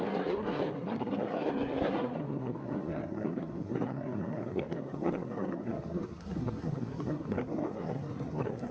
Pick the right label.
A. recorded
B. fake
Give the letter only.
B